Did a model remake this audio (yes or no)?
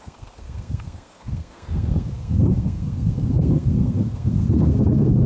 yes